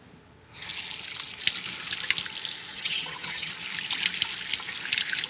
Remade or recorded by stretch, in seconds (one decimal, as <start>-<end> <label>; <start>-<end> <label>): 0.0-2.7 recorded; 2.7-3.5 remade; 3.5-5.3 recorded